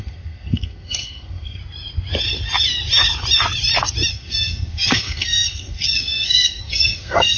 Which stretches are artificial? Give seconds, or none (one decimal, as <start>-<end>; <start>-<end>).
0.0-1.6; 4.1-7.4